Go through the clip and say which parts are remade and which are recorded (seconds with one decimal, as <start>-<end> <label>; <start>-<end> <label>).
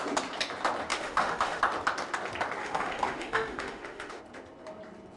0.0-0.9 recorded; 0.9-1.6 remade; 1.6-2.6 recorded; 2.6-4.2 remade; 4.2-5.2 recorded